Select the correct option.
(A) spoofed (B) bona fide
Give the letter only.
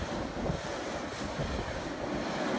B